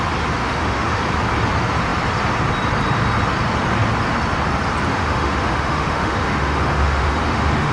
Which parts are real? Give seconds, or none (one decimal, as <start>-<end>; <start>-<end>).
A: 0.0-0.4; 1.0-4.9